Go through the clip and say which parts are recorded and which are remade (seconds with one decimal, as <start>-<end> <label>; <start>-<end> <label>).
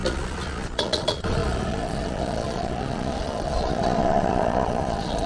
0.0-5.3 remade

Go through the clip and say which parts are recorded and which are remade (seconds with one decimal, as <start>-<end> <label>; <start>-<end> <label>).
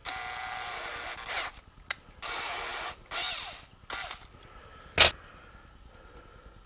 0.0-6.7 recorded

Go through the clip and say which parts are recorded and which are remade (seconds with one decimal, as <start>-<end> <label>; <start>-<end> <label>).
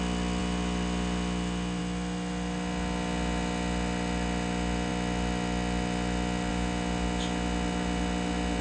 0.0-8.6 recorded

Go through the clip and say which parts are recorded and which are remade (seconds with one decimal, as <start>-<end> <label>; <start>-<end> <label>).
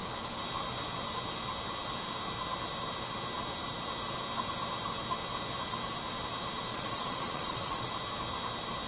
0.0-6.7 recorded; 6.7-7.9 remade; 7.9-8.9 recorded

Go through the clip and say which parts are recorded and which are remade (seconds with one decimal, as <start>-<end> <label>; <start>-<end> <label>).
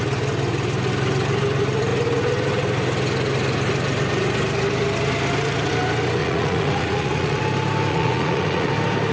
0.0-6.2 recorded; 6.2-7.4 remade; 7.4-7.9 recorded; 7.9-8.7 remade; 8.7-9.1 recorded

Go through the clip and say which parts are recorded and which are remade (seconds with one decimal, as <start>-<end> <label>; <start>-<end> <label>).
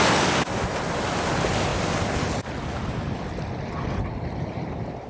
0.0-5.1 recorded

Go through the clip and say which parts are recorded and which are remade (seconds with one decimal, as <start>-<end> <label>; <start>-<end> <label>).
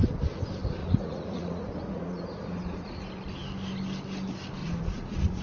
0.0-0.8 recorded; 0.8-3.1 remade; 3.1-4.6 recorded; 4.6-5.4 remade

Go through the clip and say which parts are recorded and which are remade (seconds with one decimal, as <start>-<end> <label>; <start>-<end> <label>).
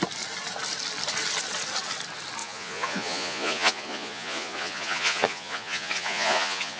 0.0-2.4 recorded; 2.4-6.8 remade